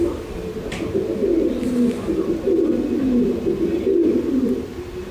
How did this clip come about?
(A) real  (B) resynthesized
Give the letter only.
A